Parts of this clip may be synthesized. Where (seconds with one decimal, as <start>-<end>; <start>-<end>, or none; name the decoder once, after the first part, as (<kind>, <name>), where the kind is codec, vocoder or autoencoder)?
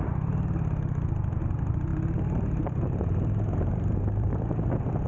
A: 1.9-5.1 (vocoder, BigVGAN v2)